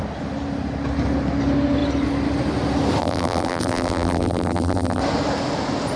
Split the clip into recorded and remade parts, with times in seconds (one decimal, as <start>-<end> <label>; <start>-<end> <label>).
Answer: 0.0-3.0 recorded; 3.0-5.0 remade; 5.0-6.0 recorded